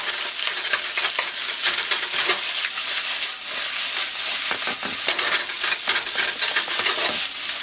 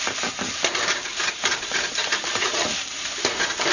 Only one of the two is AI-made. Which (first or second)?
second